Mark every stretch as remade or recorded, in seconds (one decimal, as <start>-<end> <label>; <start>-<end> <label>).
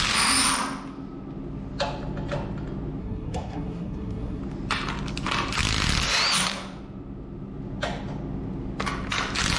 0.0-3.0 recorded; 3.0-4.4 remade; 4.4-9.6 recorded